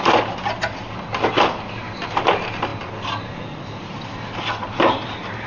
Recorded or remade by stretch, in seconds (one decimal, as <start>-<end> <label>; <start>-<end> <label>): 0.0-2.7 recorded; 2.7-5.5 remade